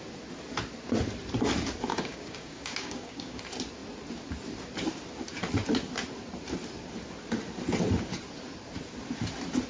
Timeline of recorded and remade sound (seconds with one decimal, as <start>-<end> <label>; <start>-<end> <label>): 0.0-1.9 recorded; 1.9-3.4 remade; 3.4-9.7 recorded